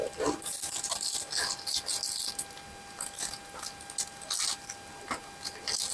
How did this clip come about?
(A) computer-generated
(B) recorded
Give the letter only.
B